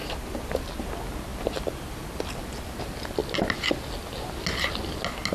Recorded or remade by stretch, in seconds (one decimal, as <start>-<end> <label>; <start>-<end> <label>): 0.0-0.9 remade; 0.9-1.3 recorded; 1.3-2.3 remade; 2.3-5.3 recorded